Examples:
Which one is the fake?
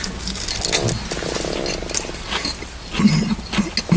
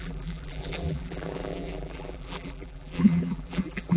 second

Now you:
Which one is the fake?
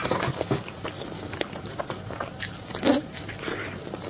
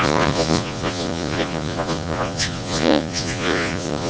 second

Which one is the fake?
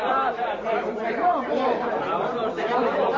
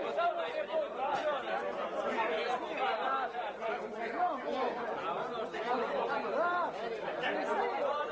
first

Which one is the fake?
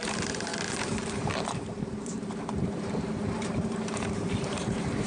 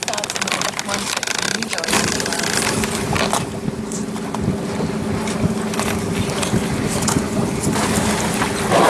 first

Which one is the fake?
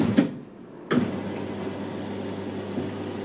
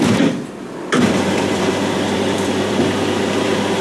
second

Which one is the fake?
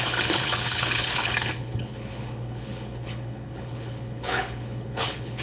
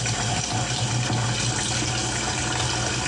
first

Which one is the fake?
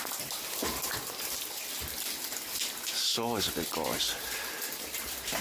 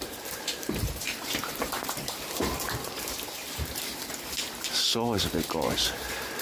second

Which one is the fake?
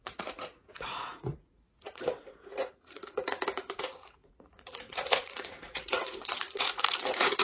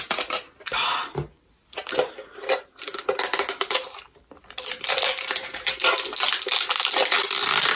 first